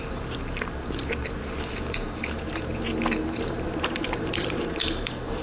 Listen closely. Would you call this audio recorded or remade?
remade